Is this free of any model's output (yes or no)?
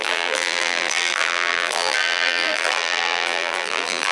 no